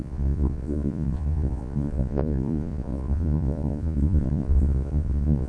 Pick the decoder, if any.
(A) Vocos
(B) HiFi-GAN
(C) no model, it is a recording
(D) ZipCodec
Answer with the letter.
A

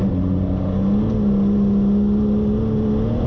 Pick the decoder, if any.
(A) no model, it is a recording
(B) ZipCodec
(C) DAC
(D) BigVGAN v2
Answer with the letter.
A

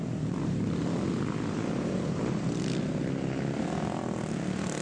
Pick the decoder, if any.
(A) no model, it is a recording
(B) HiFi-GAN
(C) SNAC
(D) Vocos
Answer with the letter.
A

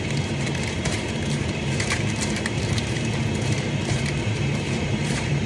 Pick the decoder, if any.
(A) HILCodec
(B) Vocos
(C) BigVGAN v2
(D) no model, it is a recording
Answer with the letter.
C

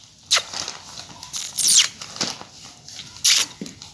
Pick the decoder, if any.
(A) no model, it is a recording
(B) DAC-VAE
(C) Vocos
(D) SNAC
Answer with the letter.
A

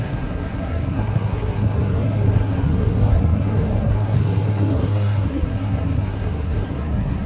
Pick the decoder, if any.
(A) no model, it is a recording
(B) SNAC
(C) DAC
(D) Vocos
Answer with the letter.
B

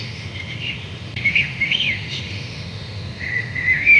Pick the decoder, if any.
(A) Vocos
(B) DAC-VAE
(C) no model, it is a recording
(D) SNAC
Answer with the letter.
B